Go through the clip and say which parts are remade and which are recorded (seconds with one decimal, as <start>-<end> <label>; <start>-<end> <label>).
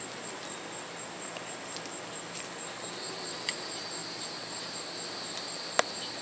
0.0-6.2 recorded